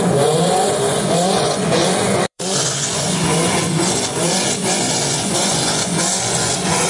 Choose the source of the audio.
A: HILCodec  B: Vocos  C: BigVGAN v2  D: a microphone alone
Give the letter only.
B